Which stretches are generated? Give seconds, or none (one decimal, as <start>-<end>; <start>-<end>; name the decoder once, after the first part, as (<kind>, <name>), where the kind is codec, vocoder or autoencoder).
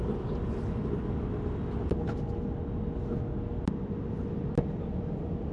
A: none